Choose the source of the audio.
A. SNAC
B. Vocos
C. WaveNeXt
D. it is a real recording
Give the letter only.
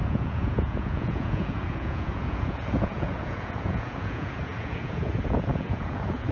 B